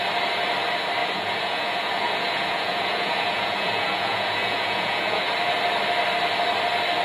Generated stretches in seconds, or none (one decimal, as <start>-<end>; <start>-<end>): 1.0-5.2